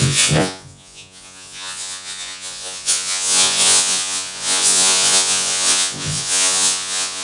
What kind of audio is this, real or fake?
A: fake